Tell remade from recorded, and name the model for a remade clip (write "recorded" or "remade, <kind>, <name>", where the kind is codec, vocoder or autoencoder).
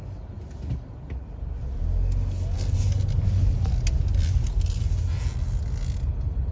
recorded